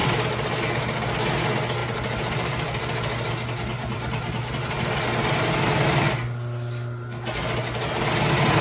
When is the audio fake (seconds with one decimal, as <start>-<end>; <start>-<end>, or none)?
1.8-3.3; 3.7-5.0